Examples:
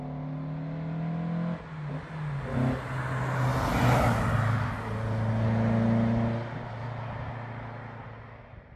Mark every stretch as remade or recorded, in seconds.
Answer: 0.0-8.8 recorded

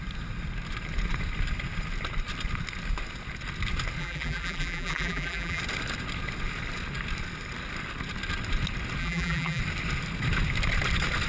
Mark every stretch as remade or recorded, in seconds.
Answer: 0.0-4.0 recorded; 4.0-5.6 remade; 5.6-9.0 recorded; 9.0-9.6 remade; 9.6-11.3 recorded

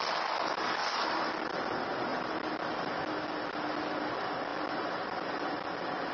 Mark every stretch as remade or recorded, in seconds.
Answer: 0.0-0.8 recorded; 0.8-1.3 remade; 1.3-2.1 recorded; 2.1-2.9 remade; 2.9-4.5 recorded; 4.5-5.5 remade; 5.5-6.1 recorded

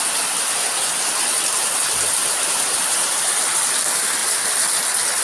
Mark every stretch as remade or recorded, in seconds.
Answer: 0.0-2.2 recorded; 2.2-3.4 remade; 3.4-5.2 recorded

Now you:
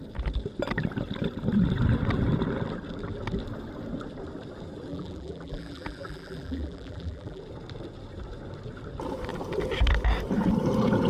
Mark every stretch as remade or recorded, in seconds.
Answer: 0.0-4.9 recorded; 4.9-7.4 remade; 7.4-11.1 recorded